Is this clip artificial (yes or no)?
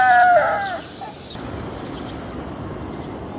no